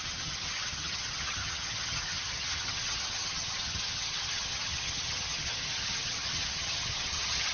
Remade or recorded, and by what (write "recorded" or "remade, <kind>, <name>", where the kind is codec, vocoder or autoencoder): remade, vocoder, HiFi-GAN